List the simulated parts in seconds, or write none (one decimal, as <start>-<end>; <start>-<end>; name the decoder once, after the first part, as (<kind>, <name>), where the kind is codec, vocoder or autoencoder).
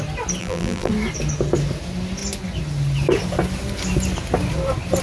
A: 0.4-0.9 (vocoder, BigVGAN v2)